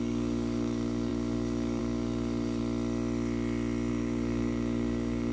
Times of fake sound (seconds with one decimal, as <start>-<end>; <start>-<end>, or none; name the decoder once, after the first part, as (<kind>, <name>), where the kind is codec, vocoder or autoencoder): 0.0-2.6 (codec, DAC); 3.9-5.3